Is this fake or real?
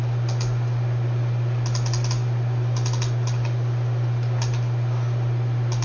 real